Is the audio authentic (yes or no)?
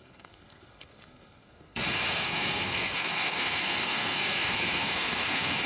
no